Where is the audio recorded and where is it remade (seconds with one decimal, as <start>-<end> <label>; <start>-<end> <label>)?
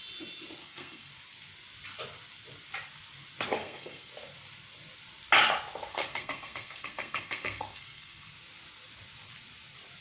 0.0-0.6 recorded; 0.6-1.1 remade; 1.1-3.6 recorded; 3.6-4.1 remade; 4.1-5.9 recorded; 5.9-8.3 remade; 8.3-10.0 recorded